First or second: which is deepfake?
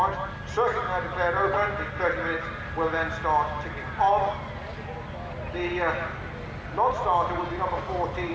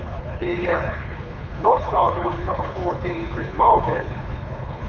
second